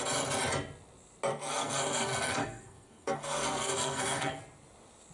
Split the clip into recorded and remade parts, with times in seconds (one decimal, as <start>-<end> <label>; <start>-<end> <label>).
0.0-1.3 recorded; 1.3-4.4 remade; 4.4-5.1 recorded